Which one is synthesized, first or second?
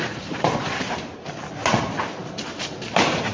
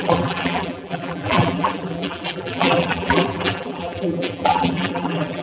second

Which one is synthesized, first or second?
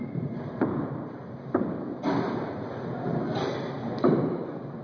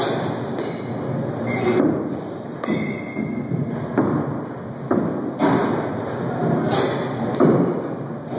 first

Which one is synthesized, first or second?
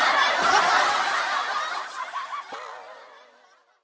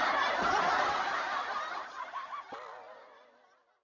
second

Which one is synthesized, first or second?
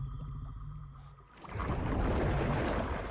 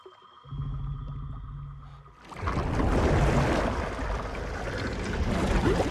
first